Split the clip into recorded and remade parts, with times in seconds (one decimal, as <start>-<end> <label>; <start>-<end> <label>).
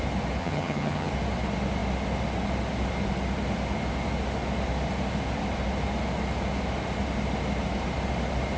0.0-0.4 recorded; 0.4-1.1 remade; 1.1-8.6 recorded